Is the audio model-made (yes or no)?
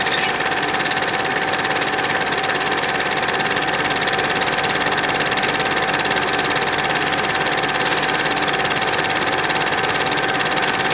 no